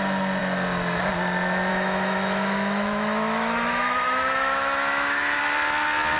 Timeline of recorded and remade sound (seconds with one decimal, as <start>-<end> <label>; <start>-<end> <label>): 0.0-1.7 recorded; 1.7-5.4 remade; 5.4-6.2 recorded